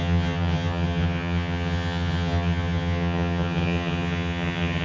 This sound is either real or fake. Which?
fake